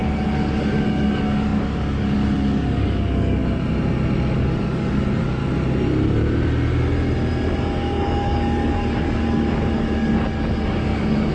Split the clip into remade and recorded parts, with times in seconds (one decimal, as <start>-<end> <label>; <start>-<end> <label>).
0.0-3.4 remade; 3.4-4.4 recorded; 4.4-5.4 remade; 5.4-7.6 recorded; 7.6-11.3 remade